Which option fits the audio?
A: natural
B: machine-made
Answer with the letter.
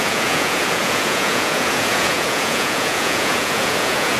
B